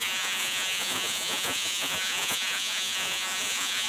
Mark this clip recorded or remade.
remade